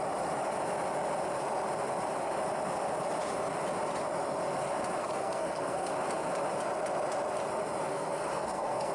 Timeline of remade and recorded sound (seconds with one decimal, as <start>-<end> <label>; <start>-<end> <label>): 0.0-5.0 recorded; 5.0-5.9 remade; 5.9-7.9 recorded; 7.9-8.9 remade